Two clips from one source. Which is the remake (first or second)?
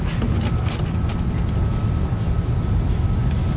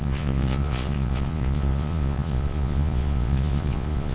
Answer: second